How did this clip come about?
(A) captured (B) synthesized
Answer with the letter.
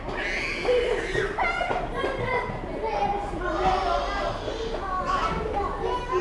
A